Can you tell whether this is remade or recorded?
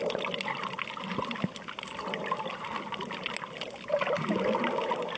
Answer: recorded